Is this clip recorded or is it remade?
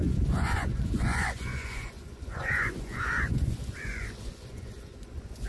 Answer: remade